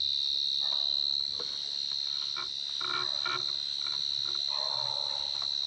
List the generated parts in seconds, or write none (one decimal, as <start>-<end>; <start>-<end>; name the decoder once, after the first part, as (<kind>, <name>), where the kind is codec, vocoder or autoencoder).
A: none